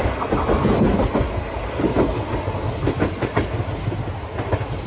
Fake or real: real